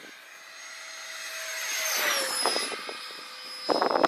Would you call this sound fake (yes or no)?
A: no